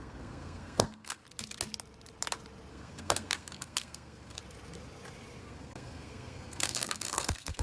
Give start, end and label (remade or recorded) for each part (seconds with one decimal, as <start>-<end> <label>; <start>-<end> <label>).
0.0-1.2 remade; 1.2-2.7 recorded; 2.7-4.4 remade; 4.4-5.4 recorded; 5.4-7.6 remade